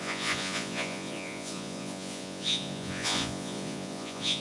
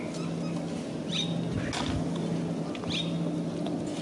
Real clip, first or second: second